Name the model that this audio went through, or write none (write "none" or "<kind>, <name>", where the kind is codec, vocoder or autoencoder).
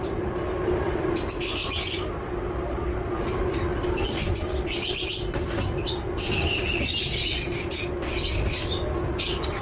none